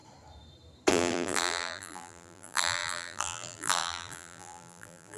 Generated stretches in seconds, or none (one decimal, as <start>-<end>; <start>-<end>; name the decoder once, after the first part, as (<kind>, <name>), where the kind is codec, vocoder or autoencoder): 0.9-5.2 (vocoder, BigVGAN v2)